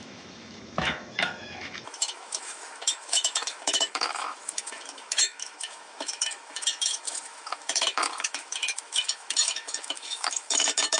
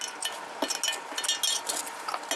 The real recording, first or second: second